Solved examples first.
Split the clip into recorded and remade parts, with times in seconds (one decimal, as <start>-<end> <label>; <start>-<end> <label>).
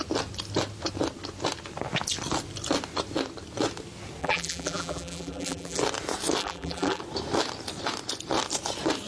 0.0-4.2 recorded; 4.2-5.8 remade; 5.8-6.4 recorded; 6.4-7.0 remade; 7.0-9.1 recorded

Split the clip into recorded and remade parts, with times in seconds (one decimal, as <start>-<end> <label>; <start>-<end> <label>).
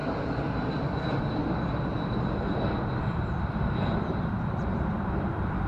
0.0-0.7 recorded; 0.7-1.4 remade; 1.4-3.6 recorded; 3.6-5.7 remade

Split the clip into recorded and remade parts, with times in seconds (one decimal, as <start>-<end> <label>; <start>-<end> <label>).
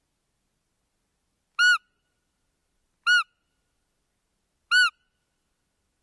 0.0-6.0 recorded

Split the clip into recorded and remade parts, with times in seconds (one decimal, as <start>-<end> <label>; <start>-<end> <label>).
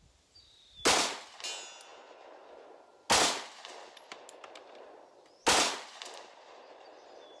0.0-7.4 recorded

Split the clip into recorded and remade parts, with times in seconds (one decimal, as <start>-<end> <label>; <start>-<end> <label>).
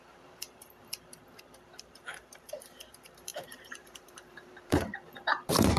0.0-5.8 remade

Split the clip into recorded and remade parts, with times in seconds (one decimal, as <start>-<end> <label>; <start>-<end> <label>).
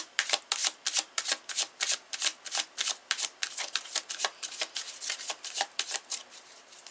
0.0-0.6 remade; 0.6-1.5 recorded; 1.5-6.9 remade